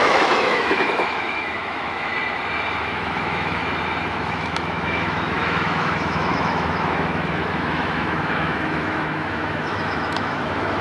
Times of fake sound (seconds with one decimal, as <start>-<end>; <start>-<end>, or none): 0.0-2.1; 2.8-3.6; 4.1-10.8

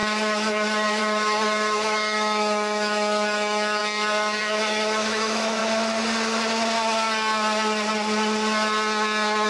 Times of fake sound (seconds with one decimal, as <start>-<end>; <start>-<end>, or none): 0.0-5.6

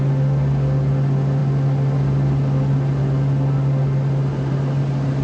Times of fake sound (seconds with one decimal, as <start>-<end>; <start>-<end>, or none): none

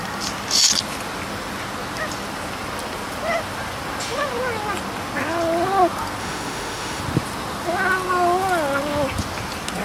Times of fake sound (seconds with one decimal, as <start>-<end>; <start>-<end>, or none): 6.2-7.0

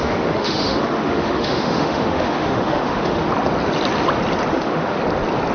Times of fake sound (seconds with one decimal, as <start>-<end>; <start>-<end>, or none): 0.0-3.3; 4.5-5.0

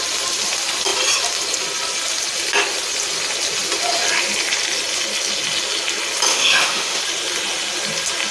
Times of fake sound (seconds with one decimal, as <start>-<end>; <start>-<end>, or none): 6.3-7.0